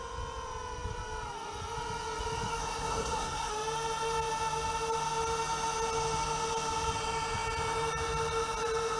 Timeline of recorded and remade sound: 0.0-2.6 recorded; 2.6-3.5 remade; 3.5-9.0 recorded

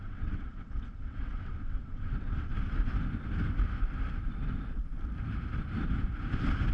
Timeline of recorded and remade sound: 0.0-2.5 remade; 2.5-6.7 recorded

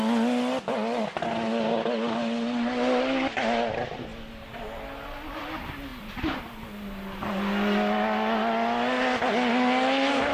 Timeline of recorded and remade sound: 0.0-10.3 recorded

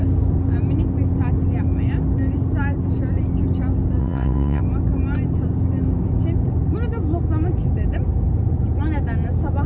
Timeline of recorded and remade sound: 0.0-4.0 recorded; 4.0-4.6 remade; 4.6-9.7 recorded

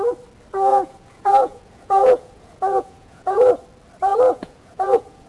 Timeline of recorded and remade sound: 0.0-0.7 recorded; 0.7-3.5 remade; 3.5-4.1 recorded; 4.1-5.3 remade

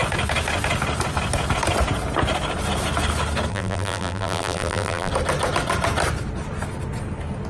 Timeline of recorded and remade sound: 0.0-3.5 recorded; 3.5-5.1 remade; 5.1-7.5 recorded